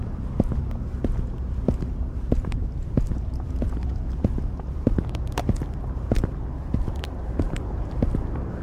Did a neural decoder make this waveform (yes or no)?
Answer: yes